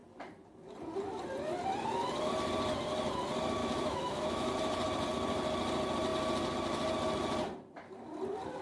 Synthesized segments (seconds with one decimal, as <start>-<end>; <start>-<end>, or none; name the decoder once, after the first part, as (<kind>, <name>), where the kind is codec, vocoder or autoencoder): 3.6-4.5 (autoencoder, DAC-VAE)